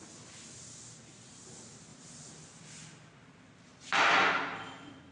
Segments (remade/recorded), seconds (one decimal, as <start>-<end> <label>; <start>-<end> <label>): 0.0-5.1 recorded